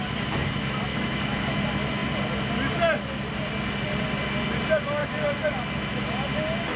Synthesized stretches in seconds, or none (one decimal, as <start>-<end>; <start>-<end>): 0.9-1.6